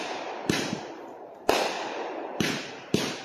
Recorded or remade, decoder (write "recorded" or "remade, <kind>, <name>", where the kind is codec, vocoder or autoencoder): remade, vocoder, BigVGAN v2